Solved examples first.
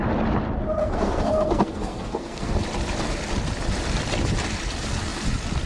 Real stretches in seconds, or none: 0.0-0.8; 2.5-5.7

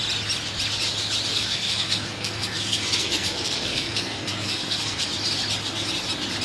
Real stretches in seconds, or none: 0.0-1.3; 5.1-6.4

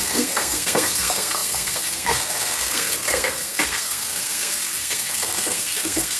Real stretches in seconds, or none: none